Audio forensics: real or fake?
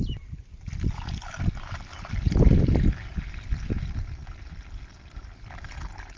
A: real